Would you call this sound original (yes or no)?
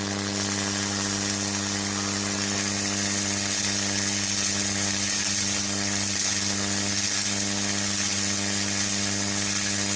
yes